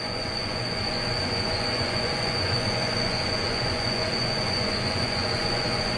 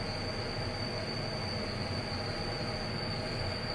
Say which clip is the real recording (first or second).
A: second